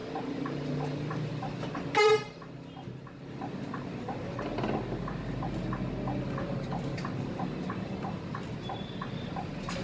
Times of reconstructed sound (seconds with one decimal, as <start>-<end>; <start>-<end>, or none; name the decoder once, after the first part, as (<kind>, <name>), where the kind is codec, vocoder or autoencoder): 0.0-1.3 (vocoder, BigVGAN v2)